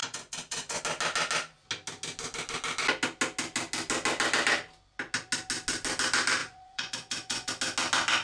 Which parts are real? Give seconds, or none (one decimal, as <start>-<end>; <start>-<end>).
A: 0.8-6.4; 7.5-8.2